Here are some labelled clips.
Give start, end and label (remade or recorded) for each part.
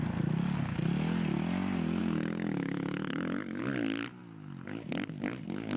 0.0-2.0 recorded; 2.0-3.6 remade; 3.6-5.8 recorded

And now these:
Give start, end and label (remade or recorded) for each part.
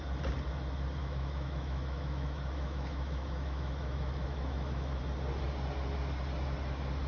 0.0-1.0 recorded; 1.0-5.0 remade; 5.0-7.1 recorded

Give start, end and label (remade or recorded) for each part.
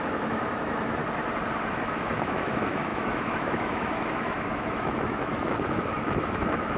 0.0-1.0 remade; 1.0-1.6 recorded; 1.6-6.8 remade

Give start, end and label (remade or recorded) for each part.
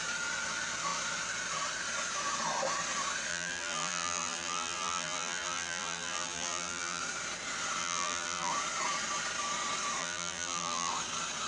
0.0-3.3 recorded; 3.3-7.0 remade; 7.0-7.8 recorded; 7.8-8.5 remade; 8.5-10.0 recorded; 10.0-10.9 remade; 10.9-11.5 recorded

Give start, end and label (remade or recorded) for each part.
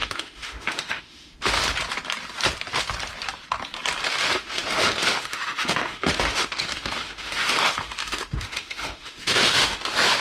0.0-1.6 remade; 1.6-4.1 recorded; 4.1-10.2 remade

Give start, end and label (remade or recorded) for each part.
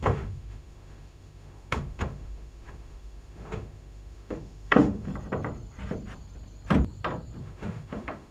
0.0-5.1 remade; 5.1-7.4 recorded; 7.4-8.3 remade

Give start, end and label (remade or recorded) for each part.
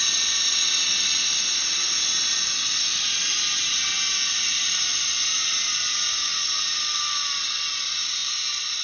0.0-8.8 recorded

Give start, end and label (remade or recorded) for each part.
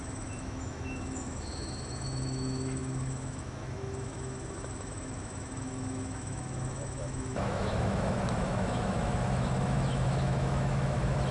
0.0-11.3 remade